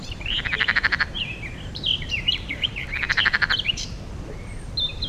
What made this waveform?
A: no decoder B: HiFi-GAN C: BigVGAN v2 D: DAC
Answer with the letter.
C